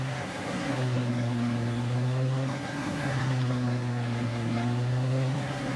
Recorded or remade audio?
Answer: remade